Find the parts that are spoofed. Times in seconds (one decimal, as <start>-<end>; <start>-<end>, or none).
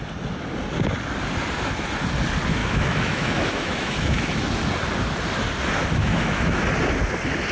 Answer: 2.6-4.4; 6.0-6.6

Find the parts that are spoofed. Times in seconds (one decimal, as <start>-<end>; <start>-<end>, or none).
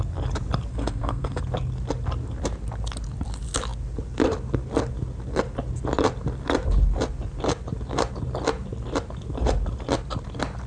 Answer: 0.7-1.4